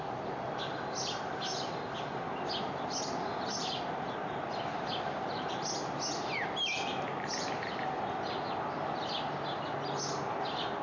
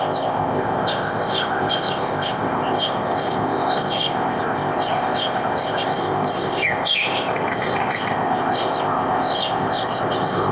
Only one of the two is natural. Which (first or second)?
first